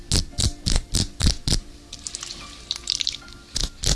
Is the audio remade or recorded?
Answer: recorded